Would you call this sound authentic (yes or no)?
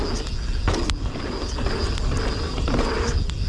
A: yes